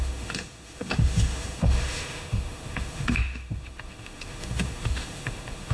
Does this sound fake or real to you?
fake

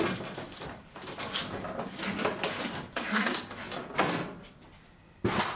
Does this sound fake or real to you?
fake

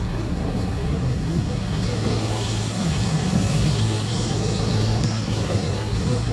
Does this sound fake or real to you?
fake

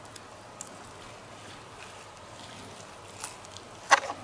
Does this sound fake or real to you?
real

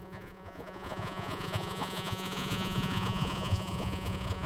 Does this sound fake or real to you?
fake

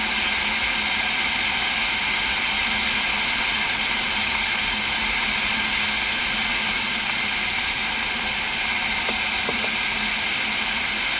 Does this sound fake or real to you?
real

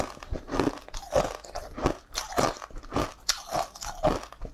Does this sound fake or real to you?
real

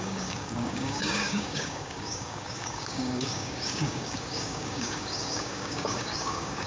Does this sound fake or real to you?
fake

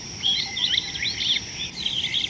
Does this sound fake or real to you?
fake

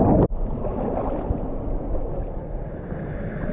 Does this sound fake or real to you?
real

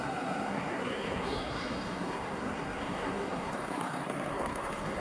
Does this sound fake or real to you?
fake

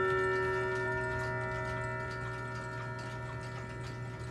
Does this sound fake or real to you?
real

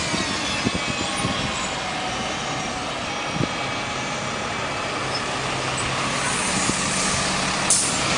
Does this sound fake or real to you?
real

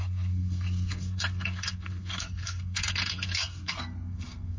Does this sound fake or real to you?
fake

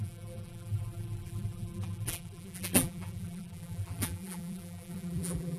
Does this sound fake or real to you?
fake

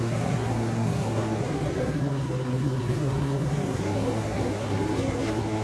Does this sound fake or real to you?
fake